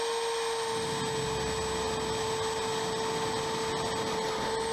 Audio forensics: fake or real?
real